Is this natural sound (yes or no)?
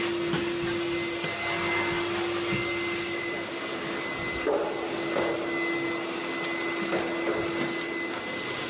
yes